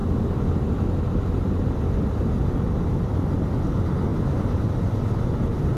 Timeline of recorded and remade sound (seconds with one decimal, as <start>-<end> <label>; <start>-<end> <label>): 0.0-0.8 remade; 0.8-5.8 recorded